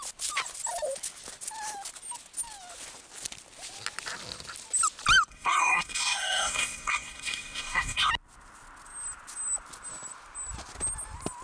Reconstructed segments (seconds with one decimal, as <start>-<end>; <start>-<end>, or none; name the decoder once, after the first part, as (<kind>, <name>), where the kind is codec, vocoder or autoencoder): 5.3-8.1 (codec, SNAC)